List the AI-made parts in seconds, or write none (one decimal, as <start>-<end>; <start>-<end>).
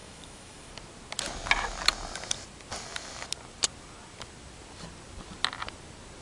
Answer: 0.0-0.7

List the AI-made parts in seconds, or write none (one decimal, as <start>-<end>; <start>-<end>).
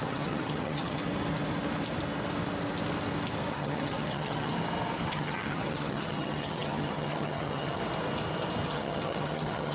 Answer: 0.0-1.0; 3.5-4.5; 5.1-7.8; 8.7-9.7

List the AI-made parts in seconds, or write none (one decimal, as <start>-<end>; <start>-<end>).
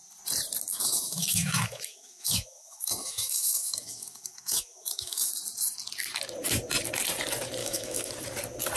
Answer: 0.7-5.3; 7.6-8.1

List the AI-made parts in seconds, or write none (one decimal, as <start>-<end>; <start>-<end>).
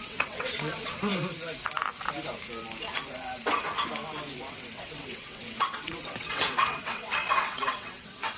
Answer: 0.0-1.1; 4.5-8.4